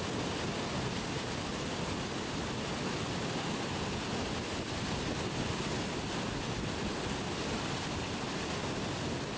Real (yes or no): yes